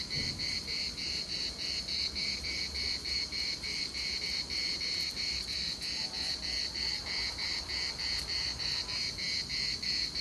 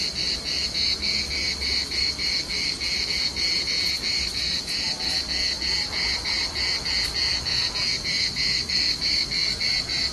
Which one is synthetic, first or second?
first